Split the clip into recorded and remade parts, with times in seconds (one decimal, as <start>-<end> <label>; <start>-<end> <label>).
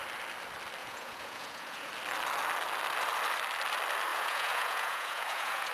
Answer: 0.0-0.8 recorded; 0.8-1.9 remade; 1.9-4.1 recorded; 4.1-5.7 remade